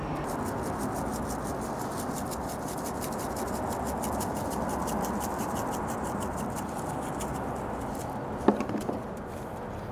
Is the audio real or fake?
real